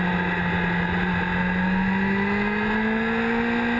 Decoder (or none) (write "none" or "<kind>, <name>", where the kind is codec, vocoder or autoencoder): none